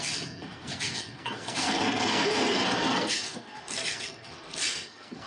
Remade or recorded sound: remade